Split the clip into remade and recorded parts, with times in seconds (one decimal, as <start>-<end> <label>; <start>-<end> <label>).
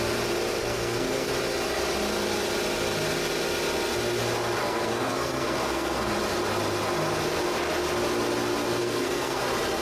0.0-0.6 recorded; 0.6-1.3 remade; 1.3-4.6 recorded; 4.6-6.1 remade; 6.1-8.8 recorded; 8.8-9.4 remade; 9.4-9.8 recorded